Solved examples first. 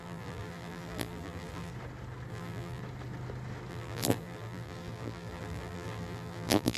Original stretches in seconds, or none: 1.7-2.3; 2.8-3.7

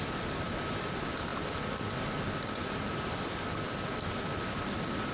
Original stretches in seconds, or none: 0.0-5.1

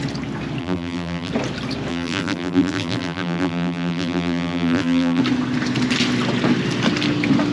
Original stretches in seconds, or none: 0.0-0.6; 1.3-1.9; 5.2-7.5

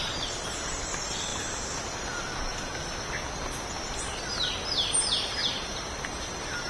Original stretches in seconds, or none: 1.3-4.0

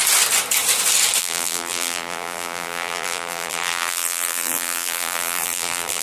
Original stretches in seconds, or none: 0.0-1.2

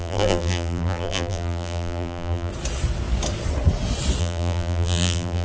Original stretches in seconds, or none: 2.5-4.2

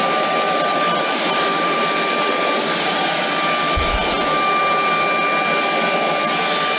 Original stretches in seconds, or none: 0.0-0.9; 3.2-6.8

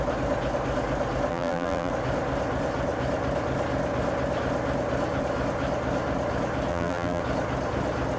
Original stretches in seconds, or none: 0.0-1.3; 1.9-6.7; 7.2-8.2